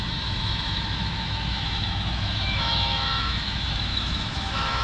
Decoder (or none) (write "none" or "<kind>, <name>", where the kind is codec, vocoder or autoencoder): autoencoder, DAC-VAE